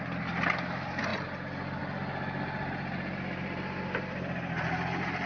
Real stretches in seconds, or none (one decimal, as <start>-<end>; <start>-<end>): 0.0-5.3